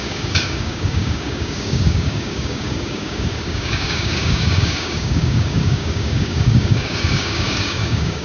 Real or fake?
fake